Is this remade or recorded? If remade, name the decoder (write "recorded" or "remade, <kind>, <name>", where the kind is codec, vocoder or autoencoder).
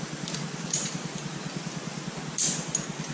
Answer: recorded